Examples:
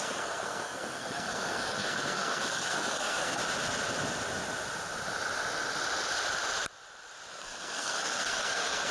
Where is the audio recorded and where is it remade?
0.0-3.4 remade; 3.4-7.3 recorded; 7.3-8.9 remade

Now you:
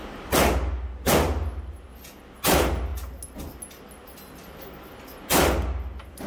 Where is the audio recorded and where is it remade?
0.0-6.3 recorded

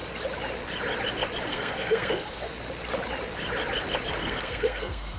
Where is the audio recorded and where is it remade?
0.0-1.5 recorded; 1.5-2.5 remade; 2.5-4.2 recorded; 4.2-5.2 remade

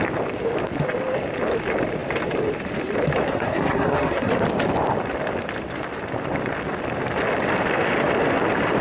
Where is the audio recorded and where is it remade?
0.0-3.3 recorded; 3.3-4.3 remade; 4.3-8.8 recorded

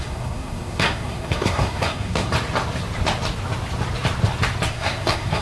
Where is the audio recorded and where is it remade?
0.0-2.3 remade; 2.3-4.7 recorded; 4.7-5.4 remade

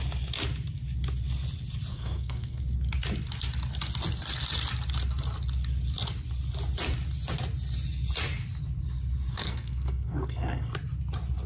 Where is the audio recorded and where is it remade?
0.0-1.9 recorded; 1.9-2.6 remade; 2.6-9.3 recorded; 9.3-10.7 remade; 10.7-11.5 recorded